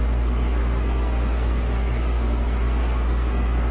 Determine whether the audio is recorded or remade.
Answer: remade